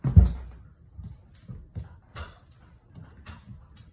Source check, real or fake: real